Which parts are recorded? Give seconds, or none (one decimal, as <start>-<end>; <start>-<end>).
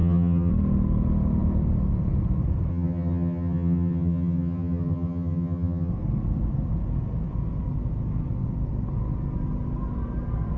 0.5-2.7; 5.9-10.6